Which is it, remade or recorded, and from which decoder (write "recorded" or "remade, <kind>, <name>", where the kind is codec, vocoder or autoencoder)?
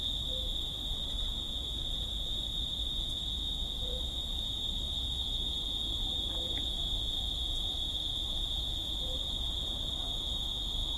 remade, vocoder, BigVGAN v2